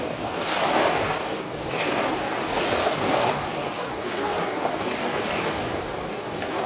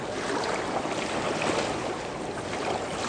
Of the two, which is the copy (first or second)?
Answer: first